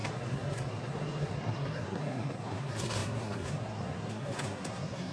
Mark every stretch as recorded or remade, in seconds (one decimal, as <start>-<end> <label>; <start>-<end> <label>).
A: 0.0-5.1 remade